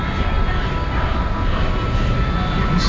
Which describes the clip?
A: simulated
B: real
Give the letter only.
B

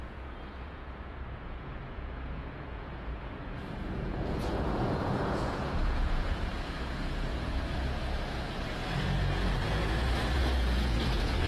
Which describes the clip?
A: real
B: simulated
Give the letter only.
B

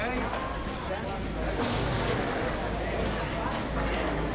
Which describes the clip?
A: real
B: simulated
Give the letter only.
A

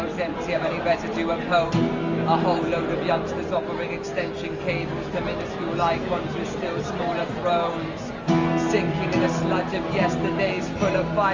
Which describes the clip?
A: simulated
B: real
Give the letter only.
B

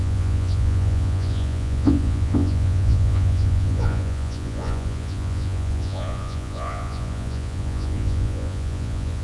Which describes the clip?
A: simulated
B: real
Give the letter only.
A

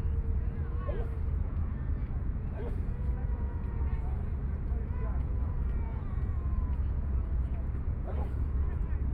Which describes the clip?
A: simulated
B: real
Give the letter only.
A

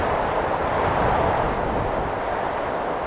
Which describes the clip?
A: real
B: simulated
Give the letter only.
A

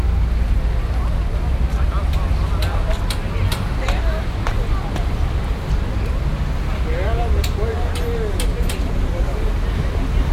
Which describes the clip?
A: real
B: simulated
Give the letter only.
A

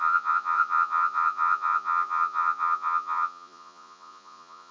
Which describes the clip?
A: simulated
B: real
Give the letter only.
A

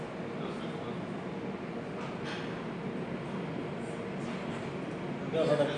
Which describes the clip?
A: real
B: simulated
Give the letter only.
A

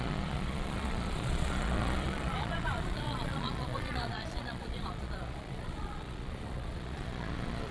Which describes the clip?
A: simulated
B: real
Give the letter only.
A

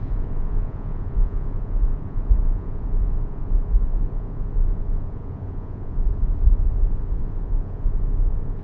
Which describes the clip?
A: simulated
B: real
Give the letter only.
A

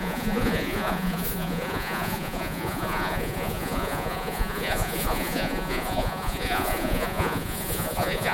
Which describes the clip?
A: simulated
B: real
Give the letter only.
A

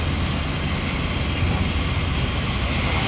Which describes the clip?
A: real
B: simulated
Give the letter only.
A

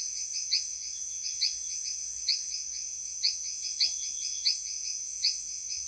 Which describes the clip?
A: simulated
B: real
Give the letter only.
A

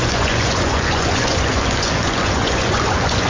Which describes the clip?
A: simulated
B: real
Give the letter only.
A